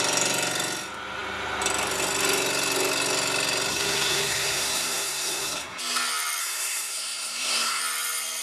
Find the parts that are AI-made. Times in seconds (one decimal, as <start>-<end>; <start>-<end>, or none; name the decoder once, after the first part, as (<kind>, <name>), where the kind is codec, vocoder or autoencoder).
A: 3.7-5.8 (codec, SNAC); 6.4-7.8